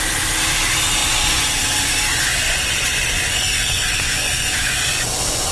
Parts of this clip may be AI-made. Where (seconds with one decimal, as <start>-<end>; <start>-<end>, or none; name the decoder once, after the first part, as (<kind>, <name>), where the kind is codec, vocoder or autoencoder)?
1.0-1.6 (vocoder, Vocos); 2.1-5.5